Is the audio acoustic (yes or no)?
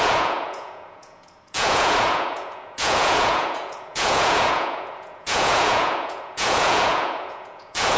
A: no